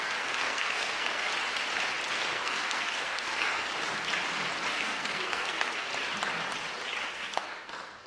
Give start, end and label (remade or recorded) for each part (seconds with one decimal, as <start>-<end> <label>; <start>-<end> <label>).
0.0-1.3 remade; 1.3-2.1 recorded; 2.1-3.7 remade; 3.7-4.7 recorded; 4.7-5.9 remade; 5.9-7.1 recorded; 7.1-8.1 remade